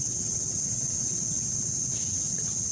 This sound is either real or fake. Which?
fake